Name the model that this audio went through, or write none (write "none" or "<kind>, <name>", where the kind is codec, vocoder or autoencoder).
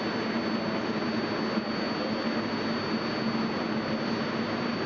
none